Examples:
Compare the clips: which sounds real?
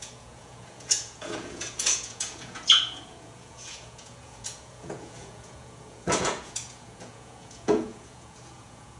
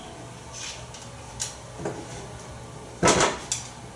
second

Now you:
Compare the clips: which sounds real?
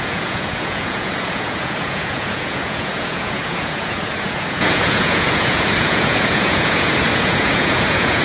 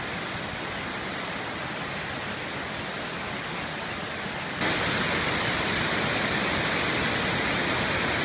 second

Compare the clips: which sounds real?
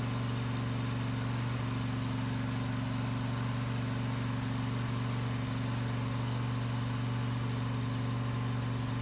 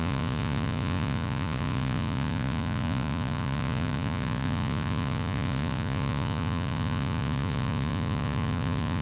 first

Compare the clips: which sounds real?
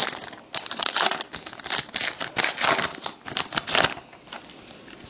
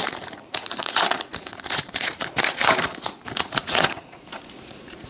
first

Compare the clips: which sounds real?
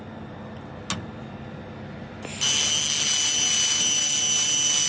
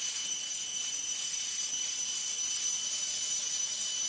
first